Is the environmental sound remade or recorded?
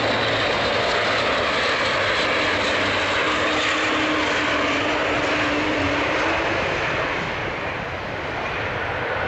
recorded